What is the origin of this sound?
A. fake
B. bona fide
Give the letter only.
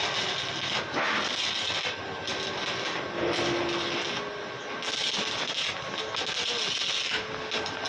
B